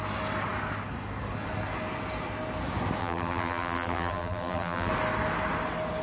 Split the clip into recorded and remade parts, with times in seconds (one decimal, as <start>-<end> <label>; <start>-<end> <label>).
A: 0.0-3.0 recorded; 3.0-4.9 remade; 4.9-6.0 recorded